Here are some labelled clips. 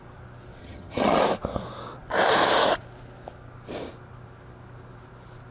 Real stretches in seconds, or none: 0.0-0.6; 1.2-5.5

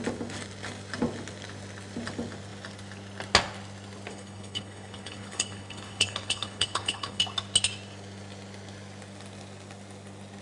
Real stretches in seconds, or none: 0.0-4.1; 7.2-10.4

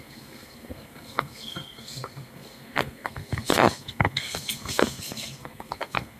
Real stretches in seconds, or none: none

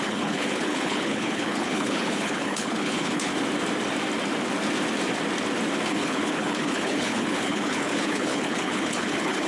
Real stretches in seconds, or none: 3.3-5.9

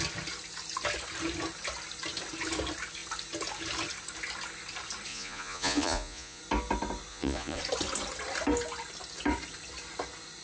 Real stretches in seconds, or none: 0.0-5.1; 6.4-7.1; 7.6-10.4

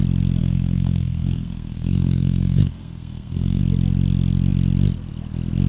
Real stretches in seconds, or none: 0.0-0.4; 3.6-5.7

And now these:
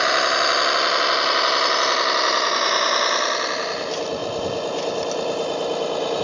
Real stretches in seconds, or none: 0.0-6.2

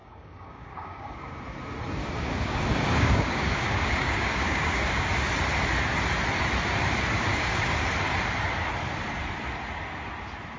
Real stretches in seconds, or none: 1.4-2.0; 5.1-7.3; 7.9-10.6